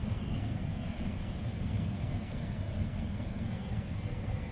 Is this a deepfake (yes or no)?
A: yes